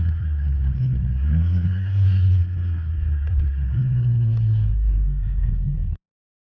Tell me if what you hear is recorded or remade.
remade